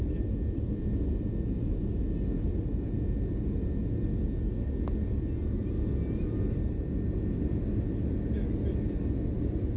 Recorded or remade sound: recorded